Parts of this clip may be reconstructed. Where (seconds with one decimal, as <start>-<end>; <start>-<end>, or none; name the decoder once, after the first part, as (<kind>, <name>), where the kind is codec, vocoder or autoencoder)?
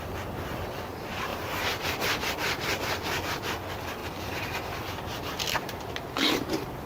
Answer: 4.0-5.9 (vocoder, BigVGAN v2)